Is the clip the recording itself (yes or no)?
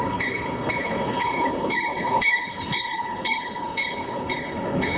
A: no